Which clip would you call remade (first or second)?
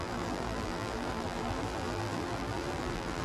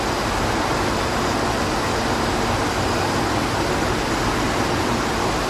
first